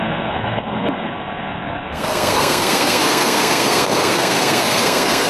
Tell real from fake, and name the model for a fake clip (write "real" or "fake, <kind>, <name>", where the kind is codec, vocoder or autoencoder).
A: fake, codec, SNAC